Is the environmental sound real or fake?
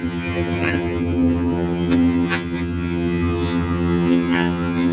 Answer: fake